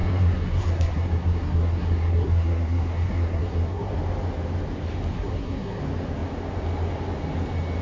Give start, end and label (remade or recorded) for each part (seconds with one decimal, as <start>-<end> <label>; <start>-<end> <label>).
0.0-3.9 remade; 3.9-5.1 recorded; 5.1-5.8 remade; 5.8-7.8 recorded